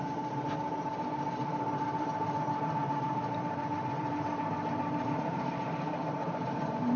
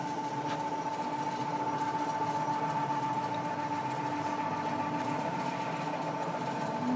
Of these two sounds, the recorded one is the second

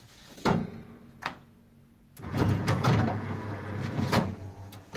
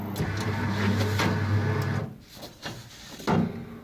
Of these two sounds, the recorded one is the second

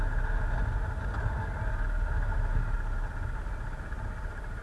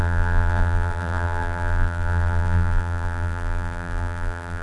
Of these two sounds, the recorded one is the first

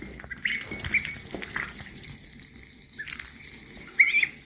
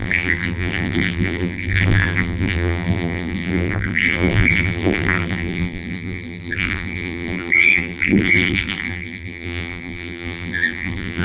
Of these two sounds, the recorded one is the first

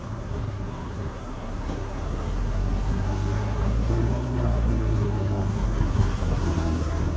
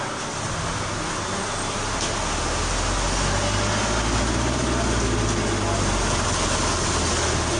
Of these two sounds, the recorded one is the second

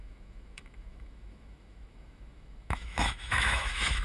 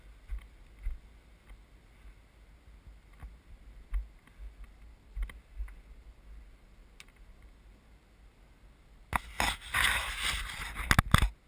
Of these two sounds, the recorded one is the second